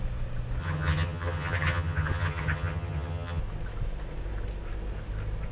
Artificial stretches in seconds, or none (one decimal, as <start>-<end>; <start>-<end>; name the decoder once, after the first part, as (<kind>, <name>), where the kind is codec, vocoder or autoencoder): 0.6-3.4 (vocoder, HiFi-GAN)